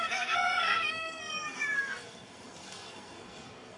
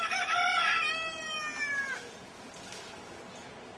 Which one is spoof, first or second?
first